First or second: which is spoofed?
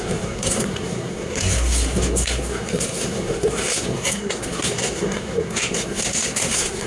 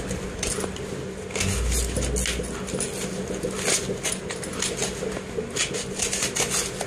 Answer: first